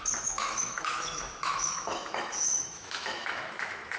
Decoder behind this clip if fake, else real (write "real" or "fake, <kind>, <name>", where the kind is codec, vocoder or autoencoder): fake, autoencoder, DAC-VAE